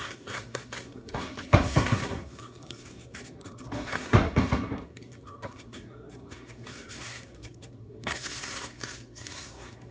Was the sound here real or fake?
fake